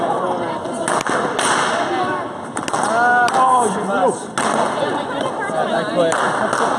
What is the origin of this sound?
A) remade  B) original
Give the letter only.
B